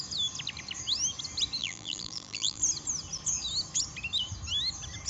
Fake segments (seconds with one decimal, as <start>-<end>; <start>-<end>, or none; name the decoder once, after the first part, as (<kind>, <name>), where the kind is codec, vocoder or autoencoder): 1.6-2.6 (vocoder, BigVGAN v2)